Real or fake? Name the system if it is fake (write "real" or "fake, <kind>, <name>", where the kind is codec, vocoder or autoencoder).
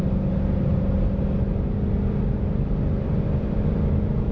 real